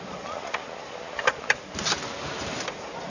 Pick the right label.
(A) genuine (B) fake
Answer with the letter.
A